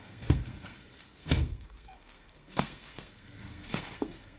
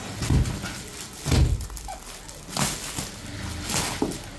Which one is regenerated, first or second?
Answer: first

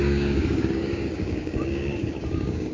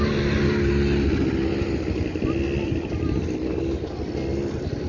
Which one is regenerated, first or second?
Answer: first